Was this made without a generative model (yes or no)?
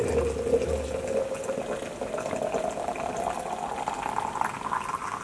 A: yes